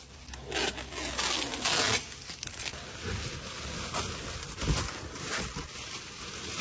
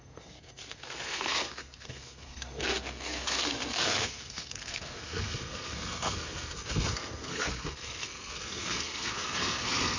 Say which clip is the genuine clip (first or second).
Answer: first